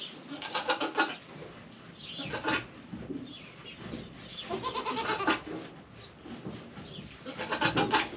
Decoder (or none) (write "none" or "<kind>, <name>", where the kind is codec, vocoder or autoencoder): none